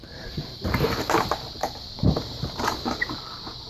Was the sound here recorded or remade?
remade